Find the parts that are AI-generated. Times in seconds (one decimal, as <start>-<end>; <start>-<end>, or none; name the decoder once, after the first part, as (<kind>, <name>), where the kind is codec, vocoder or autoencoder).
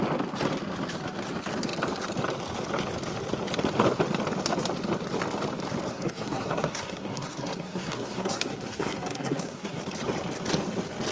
5.9-9.8 (codec, SNAC)